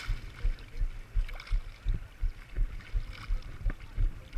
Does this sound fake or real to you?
real